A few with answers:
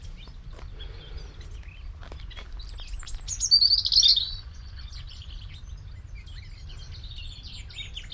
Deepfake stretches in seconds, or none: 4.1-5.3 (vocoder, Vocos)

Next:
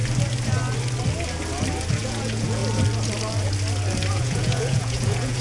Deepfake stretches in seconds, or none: 1.9-2.6 (vocoder, Vocos); 4.1-5.4

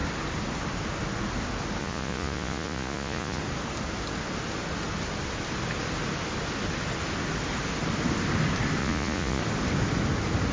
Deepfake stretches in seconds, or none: 1.8-3.4 (vocoder, Vocos); 8.8-9.4

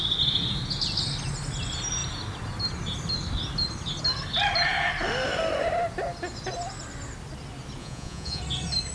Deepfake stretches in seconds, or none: 7.8-8.4 (vocoder, Vocos)

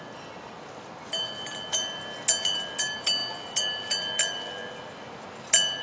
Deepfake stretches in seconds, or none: none